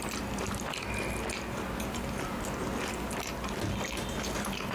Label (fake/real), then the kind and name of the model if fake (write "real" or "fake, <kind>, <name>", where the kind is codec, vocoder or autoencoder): real